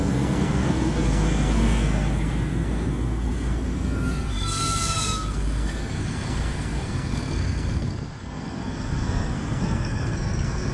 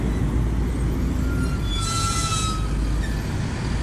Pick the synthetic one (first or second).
first